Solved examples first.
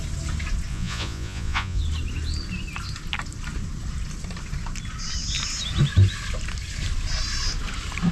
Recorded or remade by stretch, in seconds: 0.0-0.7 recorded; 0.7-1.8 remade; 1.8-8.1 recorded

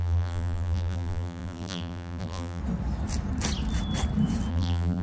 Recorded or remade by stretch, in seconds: 0.0-2.6 remade; 2.6-4.5 recorded; 4.5-5.0 remade

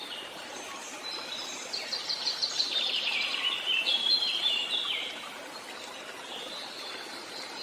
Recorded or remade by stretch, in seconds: 0.0-3.3 remade; 3.3-3.8 recorded; 3.8-4.6 remade; 4.6-7.6 recorded